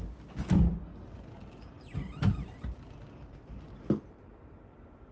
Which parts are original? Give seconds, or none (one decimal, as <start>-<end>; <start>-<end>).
0.0-5.1